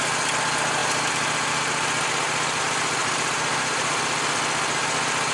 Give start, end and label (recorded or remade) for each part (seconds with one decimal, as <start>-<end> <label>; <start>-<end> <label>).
0.0-3.0 recorded; 3.0-4.0 remade; 4.0-5.3 recorded